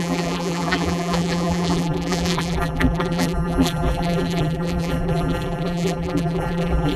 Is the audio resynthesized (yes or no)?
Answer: yes